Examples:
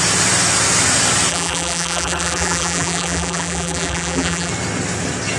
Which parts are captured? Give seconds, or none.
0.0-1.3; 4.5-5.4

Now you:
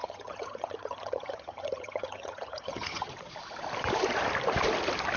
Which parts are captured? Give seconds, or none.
3.1-5.2

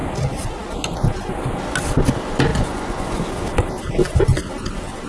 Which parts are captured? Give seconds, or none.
0.0-2.5; 3.2-5.1

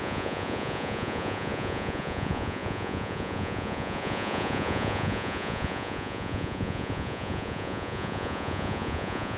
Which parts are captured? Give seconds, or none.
none

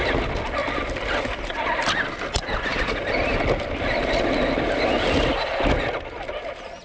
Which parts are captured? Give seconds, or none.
0.0-6.8

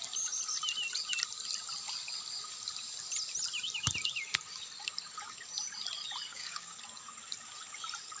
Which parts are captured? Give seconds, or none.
0.0-6.3; 6.8-8.2